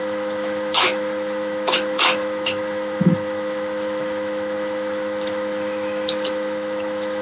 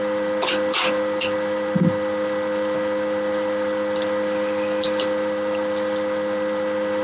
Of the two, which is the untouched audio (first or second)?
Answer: second